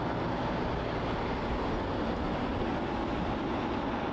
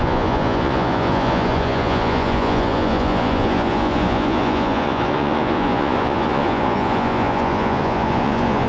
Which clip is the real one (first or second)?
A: first